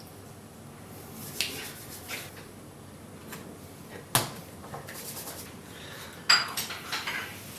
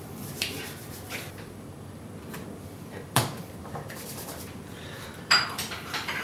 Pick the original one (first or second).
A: first